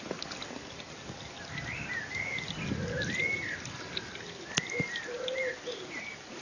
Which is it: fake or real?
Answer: real